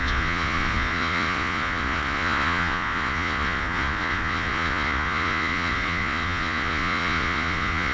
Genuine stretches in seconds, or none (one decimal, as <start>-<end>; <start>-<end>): none